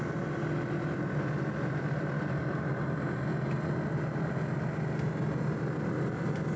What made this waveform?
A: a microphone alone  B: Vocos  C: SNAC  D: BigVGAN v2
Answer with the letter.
A